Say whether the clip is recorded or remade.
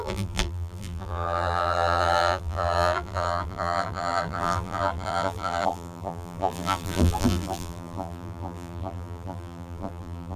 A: remade